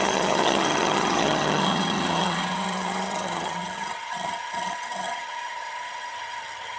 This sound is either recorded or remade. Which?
remade